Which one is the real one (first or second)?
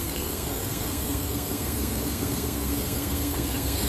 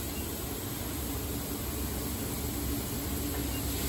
second